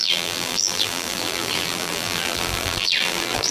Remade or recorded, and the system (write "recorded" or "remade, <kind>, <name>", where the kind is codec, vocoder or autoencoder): remade, vocoder, BigVGAN v2